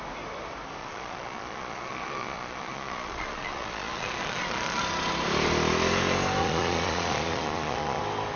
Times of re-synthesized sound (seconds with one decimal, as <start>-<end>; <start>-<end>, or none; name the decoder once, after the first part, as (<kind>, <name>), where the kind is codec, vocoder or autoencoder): 0.8-4.8 (vocoder, Vocos); 6.4-8.0